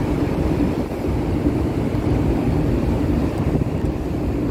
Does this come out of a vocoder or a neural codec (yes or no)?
yes